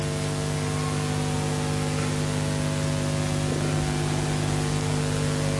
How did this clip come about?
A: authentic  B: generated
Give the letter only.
A